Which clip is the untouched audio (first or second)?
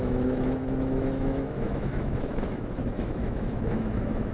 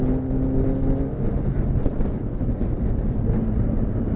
second